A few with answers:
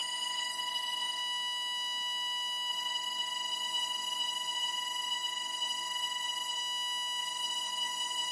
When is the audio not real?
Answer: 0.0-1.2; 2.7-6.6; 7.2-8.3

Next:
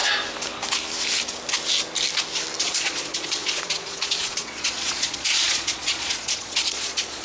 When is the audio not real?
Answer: 2.6-7.2

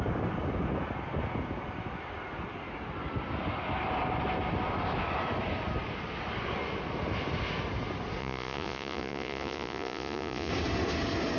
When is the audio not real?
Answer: 8.2-10.5

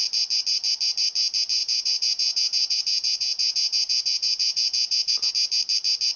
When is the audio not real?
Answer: 1.6-5.3

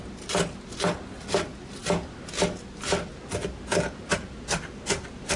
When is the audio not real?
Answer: none

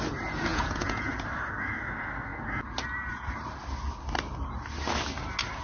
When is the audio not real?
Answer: 0.5-1.1